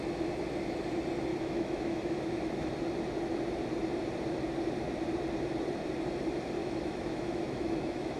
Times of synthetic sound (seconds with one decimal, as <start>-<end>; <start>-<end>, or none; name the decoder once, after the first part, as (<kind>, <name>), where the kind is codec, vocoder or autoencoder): 1.3-2.7 (autoencoder, DAC-VAE); 6.6-8.2